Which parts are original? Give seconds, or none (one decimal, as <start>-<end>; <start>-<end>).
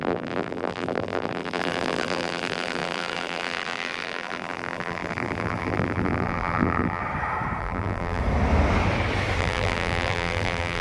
7.0-7.6; 8.2-9.4